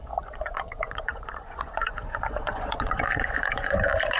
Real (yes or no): no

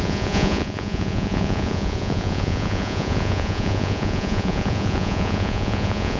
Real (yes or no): no